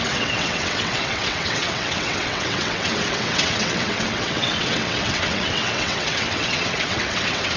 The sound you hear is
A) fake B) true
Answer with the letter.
A